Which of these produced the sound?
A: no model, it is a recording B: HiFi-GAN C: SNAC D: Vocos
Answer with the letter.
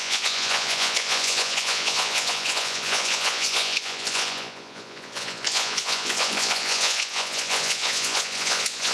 D